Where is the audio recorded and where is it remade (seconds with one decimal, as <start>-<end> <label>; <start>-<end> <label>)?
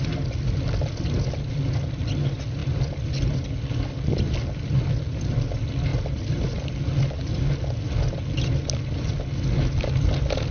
0.0-10.5 recorded